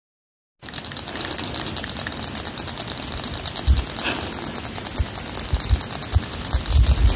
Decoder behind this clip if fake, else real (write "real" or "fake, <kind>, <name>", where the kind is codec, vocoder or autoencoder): real